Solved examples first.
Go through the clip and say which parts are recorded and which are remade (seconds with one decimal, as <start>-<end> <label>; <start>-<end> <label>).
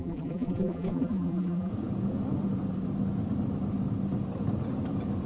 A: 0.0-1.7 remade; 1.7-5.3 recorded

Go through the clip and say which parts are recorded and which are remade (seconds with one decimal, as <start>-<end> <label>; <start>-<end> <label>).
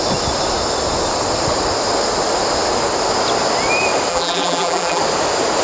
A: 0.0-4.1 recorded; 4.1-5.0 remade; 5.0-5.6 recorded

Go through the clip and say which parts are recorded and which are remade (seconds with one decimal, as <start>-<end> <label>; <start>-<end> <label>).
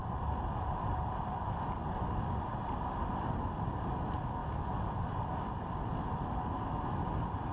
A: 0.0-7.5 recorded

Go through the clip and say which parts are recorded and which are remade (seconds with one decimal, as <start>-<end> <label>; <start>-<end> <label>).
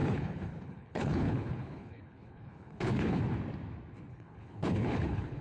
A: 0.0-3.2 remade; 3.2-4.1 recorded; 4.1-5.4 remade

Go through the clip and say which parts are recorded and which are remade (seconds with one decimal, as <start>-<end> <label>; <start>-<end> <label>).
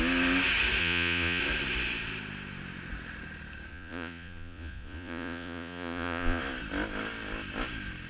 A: 0.0-0.8 recorded; 0.8-1.4 remade; 1.4-3.7 recorded; 3.7-6.4 remade; 6.4-8.1 recorded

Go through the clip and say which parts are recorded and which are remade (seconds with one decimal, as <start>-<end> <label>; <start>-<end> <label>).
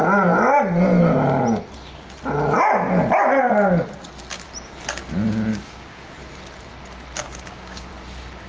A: 0.0-5.5 recorded; 5.5-6.1 remade; 6.1-7.2 recorded; 7.2-7.9 remade; 7.9-8.5 recorded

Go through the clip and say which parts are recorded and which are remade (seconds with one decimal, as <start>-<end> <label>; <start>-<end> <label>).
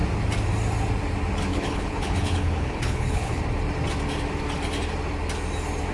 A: 0.0-1.5 recorded; 1.5-3.4 remade; 3.4-5.9 recorded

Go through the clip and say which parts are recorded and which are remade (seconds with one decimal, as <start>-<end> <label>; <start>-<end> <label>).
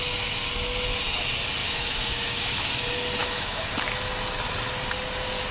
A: 0.0-1.6 recorded; 1.6-2.7 remade; 2.7-3.2 recorded; 3.2-3.7 remade; 3.7-5.5 recorded